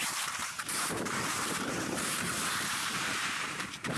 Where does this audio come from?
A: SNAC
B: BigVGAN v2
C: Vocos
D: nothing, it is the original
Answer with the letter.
B